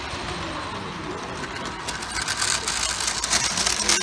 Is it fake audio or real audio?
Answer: real